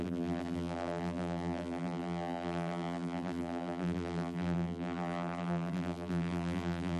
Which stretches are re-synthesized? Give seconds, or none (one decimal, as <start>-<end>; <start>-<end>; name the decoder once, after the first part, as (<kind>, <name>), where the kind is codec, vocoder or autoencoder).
0.0-7.0 (vocoder, BigVGAN v2)